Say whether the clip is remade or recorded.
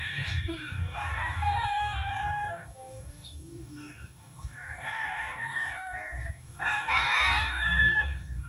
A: remade